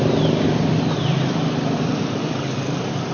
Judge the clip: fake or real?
real